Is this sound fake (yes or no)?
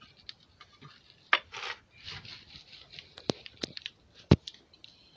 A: no